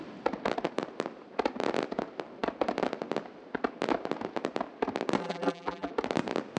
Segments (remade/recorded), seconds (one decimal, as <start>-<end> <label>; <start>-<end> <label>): 0.0-5.2 recorded; 5.2-5.9 remade; 5.9-6.6 recorded